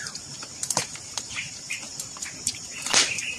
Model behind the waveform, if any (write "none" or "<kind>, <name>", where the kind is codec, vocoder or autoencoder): vocoder, BigVGAN v2